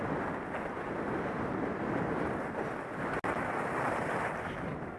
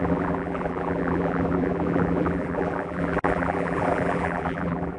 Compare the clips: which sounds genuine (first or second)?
first